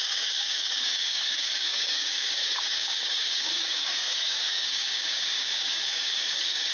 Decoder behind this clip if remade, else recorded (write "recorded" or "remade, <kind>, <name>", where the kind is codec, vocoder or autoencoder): remade, codec, DAC